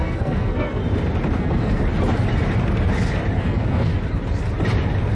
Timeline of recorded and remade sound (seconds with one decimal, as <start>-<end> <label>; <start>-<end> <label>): 0.0-0.8 remade; 0.8-1.4 recorded; 1.4-1.8 remade; 1.8-3.4 recorded; 3.4-3.9 remade; 3.9-5.2 recorded